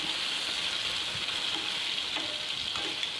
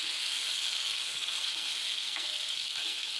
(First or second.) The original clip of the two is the first